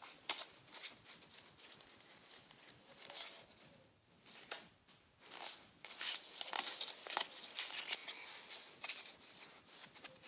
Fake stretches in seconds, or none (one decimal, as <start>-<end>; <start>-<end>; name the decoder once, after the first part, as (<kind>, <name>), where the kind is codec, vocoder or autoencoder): none